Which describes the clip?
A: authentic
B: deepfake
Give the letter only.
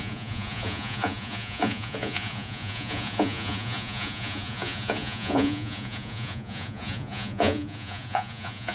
B